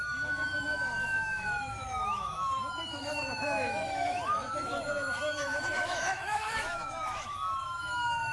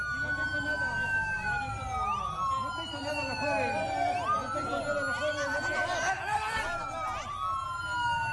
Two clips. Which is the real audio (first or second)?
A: second